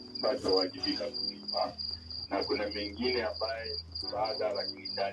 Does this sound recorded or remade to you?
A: recorded